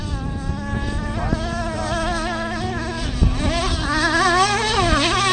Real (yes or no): yes